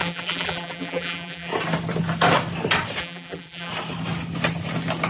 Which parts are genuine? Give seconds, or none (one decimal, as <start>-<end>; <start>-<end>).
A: 1.5-3.0; 3.7-5.1